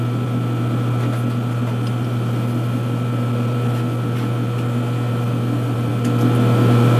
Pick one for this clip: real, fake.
real